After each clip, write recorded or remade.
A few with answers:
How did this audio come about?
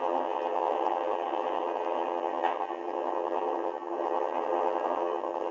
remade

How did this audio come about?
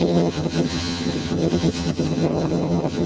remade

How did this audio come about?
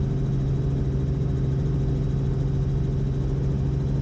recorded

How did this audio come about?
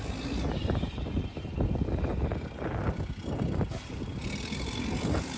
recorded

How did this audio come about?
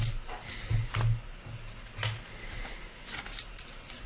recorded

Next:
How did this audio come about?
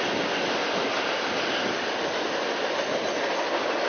recorded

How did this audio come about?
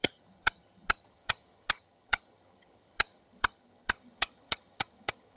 remade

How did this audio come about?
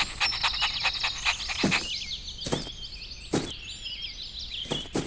recorded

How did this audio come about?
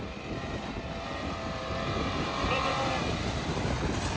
recorded